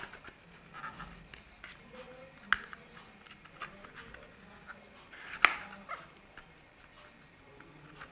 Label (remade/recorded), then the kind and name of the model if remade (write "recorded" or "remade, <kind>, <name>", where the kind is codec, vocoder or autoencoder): recorded